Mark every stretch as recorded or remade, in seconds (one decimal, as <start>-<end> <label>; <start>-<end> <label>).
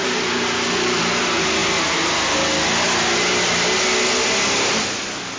0.0-5.4 recorded